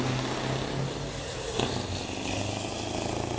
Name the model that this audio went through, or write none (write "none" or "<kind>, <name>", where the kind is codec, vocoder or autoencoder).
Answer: none